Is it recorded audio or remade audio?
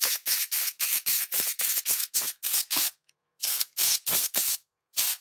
remade